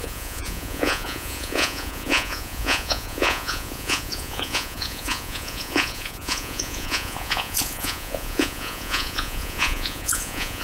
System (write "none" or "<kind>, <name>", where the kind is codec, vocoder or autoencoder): vocoder, Vocos